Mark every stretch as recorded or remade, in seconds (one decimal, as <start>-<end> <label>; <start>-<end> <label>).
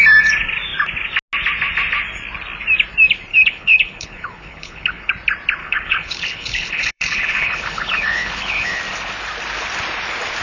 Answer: 0.0-3.3 recorded; 3.3-5.1 remade; 5.1-5.6 recorded; 5.6-8.8 remade; 8.8-10.4 recorded